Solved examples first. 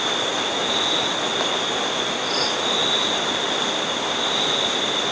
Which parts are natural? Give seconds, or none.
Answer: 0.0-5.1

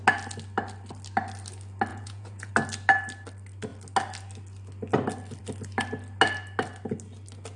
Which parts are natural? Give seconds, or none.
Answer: 0.0-1.9; 2.5-7.6

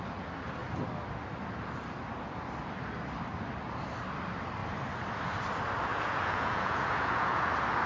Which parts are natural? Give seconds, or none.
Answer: 0.0-5.9; 7.5-7.9

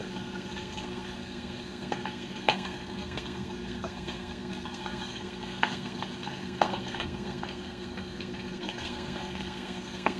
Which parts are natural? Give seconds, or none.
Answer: none